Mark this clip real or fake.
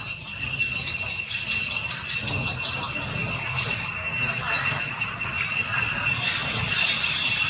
real